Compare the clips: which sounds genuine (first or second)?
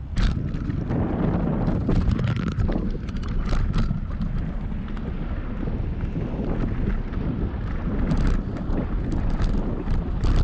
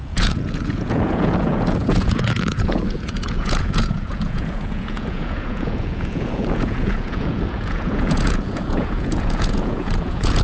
first